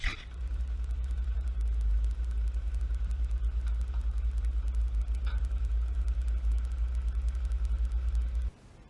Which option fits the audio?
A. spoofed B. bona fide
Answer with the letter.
B